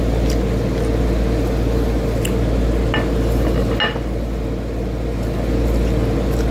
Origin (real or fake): real